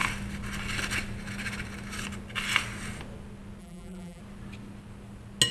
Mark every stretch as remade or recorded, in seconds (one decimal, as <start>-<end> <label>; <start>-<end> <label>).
0.0-3.6 recorded; 3.6-4.2 remade; 4.2-5.5 recorded